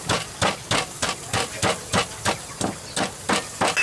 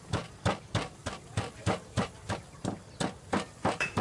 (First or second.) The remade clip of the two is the second